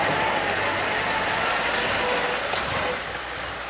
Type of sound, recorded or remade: recorded